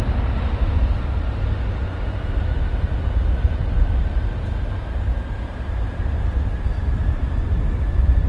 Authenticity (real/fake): real